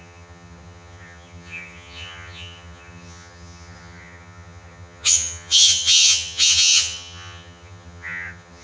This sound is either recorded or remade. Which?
remade